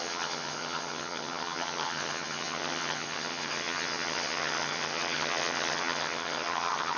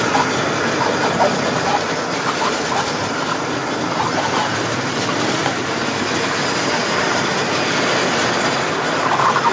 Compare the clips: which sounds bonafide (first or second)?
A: second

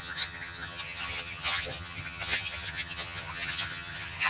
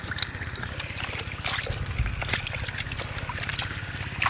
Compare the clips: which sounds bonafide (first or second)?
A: second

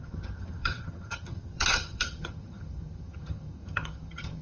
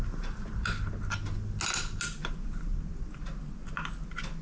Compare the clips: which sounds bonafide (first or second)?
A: second